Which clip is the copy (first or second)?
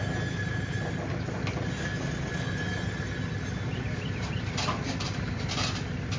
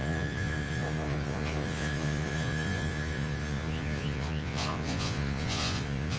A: second